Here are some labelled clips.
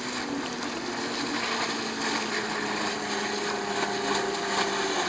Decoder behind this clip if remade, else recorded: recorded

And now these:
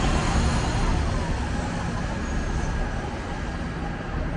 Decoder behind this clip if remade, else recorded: recorded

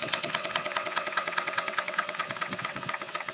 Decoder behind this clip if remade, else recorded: remade, vocoder, WaveNeXt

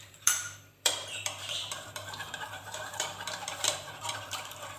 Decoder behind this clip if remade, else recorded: remade, vocoder, BigVGAN v2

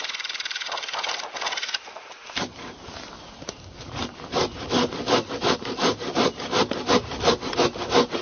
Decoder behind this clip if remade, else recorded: remade, vocoder, BigVGAN v2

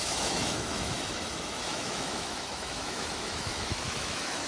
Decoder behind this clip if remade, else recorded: remade, autoencoder, DAC-VAE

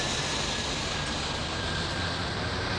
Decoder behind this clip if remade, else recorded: recorded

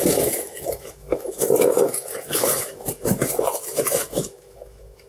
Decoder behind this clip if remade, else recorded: remade, autoencoder, DAC-VAE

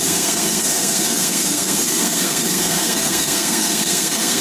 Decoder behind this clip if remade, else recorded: remade, codec, SNAC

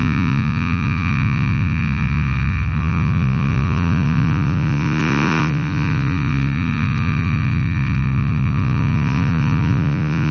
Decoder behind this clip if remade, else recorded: remade, vocoder, Vocos